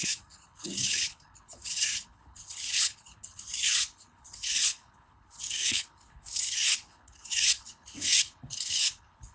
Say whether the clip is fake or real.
fake